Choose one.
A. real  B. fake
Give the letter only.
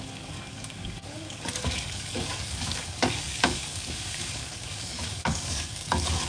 B